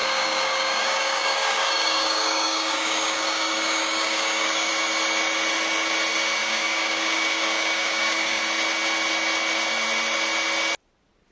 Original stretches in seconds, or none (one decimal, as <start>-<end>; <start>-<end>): 4.7-6.4; 8.4-11.3